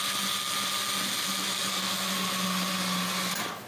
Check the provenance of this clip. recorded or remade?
recorded